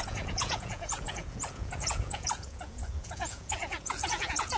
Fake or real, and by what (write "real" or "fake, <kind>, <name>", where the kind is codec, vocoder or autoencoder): fake, vocoder, Vocos